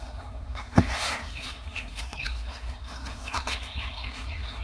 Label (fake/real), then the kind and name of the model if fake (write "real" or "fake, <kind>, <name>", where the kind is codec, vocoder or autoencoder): fake, codec, SNAC